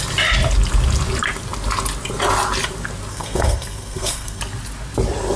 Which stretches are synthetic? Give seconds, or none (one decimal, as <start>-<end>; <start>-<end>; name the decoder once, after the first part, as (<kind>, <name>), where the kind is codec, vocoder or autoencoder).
3.1-4.4 (codec, SNAC)